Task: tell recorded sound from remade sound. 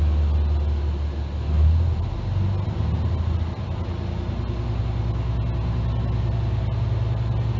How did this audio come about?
recorded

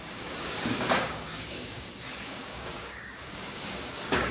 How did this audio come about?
remade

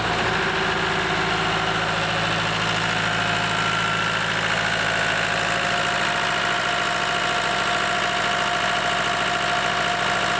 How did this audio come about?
recorded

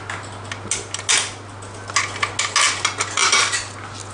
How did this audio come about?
recorded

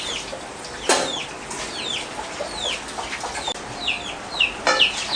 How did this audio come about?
recorded